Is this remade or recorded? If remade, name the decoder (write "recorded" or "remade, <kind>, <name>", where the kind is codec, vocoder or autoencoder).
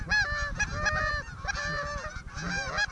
recorded